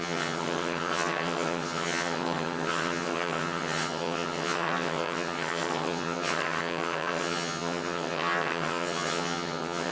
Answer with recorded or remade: remade